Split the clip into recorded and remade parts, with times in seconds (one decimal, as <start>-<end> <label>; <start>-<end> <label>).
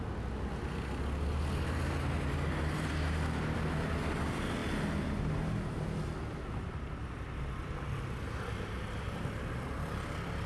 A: 0.0-10.5 recorded